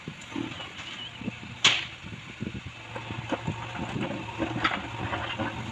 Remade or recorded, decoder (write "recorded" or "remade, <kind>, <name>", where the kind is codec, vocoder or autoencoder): recorded